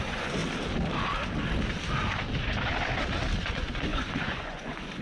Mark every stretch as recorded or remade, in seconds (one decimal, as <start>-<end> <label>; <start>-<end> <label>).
0.0-0.4 remade; 0.4-3.4 recorded; 3.4-5.0 remade

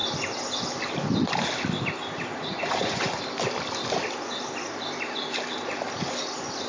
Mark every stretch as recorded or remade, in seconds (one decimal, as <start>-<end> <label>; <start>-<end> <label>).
0.0-2.3 recorded; 2.3-3.2 remade; 3.2-6.7 recorded